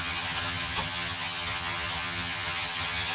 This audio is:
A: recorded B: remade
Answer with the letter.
B